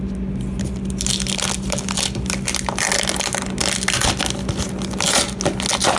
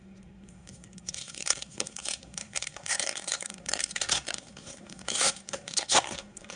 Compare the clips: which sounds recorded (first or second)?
first